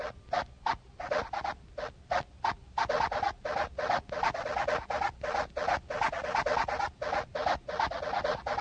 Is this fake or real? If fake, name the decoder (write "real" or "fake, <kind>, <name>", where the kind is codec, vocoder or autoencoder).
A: real